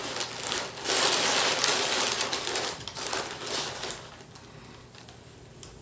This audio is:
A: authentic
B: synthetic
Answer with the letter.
A